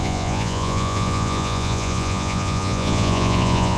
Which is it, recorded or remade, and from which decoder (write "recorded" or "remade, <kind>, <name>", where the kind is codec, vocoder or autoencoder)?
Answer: remade, vocoder, Vocos